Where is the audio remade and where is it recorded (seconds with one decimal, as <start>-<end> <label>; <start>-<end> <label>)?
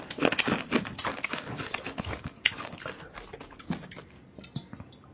0.0-1.1 recorded; 1.1-2.9 remade; 2.9-5.1 recorded